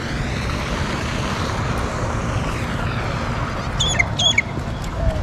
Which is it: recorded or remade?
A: recorded